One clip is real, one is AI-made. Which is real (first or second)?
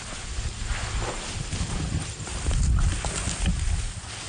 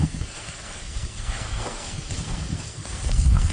first